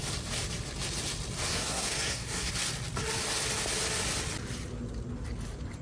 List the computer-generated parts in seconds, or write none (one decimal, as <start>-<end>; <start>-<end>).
1.5-2.5